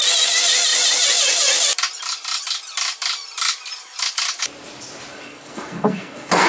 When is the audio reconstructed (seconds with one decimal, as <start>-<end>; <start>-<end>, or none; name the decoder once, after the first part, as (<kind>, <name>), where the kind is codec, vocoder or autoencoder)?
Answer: 5.1-6.5 (codec, SNAC)